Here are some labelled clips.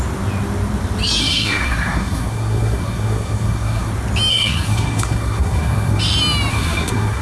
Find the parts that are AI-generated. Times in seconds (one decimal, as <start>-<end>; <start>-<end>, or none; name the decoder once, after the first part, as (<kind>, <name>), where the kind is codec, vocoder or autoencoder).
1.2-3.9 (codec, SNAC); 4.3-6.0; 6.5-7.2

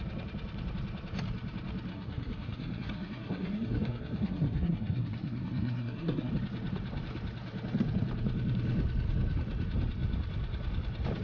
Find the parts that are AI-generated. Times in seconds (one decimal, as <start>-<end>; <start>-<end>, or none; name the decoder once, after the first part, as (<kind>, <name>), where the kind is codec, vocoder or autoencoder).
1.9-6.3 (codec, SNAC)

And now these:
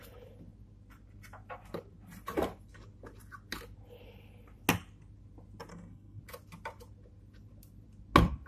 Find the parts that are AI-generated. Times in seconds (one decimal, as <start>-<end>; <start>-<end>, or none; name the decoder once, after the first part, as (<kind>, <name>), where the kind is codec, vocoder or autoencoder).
5.7-6.2 (codec, SNAC)

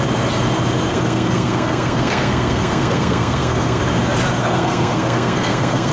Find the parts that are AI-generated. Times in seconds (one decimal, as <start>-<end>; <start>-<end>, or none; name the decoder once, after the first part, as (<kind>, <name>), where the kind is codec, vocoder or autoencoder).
0.9-3.8 (codec, SNAC); 4.4-5.9

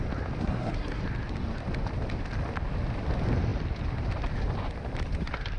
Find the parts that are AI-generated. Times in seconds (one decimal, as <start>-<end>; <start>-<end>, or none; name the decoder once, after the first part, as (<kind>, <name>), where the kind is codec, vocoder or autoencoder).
0.4-1.0 (codec, SNAC)